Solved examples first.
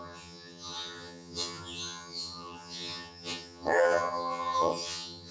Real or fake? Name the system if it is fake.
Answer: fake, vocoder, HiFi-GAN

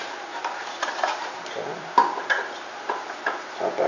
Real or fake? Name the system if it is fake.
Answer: real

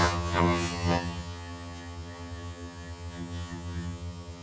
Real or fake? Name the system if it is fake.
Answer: fake, vocoder, HiFi-GAN